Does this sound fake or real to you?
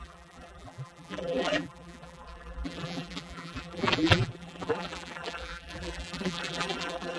fake